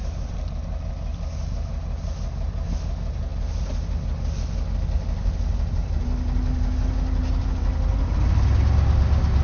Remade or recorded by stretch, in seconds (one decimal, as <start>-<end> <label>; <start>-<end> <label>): 0.0-9.4 recorded